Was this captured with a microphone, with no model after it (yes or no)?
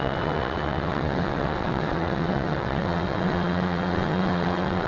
no